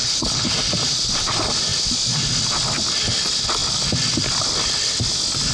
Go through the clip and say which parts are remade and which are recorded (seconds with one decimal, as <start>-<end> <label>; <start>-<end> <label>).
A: 0.0-0.5 remade; 0.5-5.5 recorded